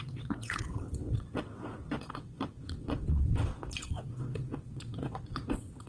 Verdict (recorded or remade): remade